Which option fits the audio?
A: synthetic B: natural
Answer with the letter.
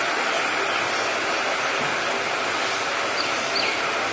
B